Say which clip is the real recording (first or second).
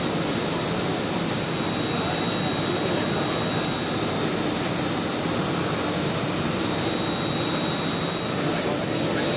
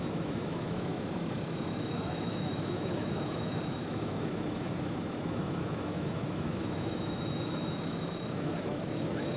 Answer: first